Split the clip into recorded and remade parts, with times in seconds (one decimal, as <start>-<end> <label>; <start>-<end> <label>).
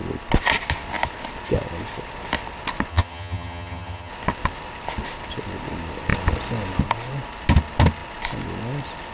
0.0-2.9 recorded; 2.9-4.1 remade; 4.1-9.1 recorded